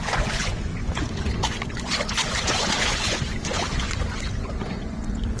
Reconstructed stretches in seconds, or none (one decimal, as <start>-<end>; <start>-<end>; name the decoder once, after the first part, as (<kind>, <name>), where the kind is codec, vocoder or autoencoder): 0.0-5.4 (vocoder, Vocos)